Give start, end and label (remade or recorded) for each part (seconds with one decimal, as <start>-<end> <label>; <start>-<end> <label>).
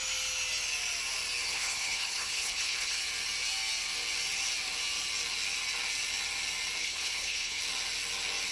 0.0-1.5 recorded; 1.5-3.0 remade; 3.0-6.8 recorded; 6.8-7.6 remade; 7.6-8.5 recorded